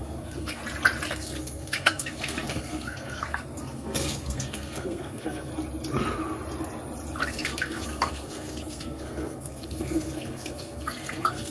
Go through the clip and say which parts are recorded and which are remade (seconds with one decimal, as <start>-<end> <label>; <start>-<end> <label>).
0.0-0.6 remade; 0.6-1.1 recorded; 1.1-5.5 remade; 5.5-7.2 recorded; 7.2-11.5 remade